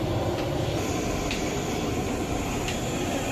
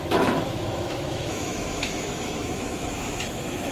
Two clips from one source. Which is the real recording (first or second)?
first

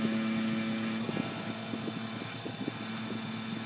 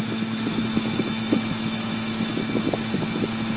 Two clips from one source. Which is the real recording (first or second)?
first